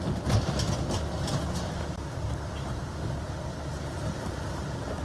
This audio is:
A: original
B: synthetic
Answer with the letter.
B